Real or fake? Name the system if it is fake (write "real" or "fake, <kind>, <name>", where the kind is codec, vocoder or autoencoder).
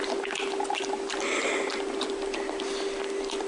real